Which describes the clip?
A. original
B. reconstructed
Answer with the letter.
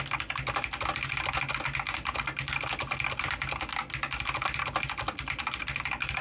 A